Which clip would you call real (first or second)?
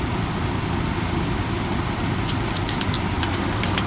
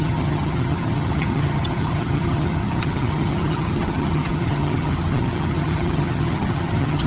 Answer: first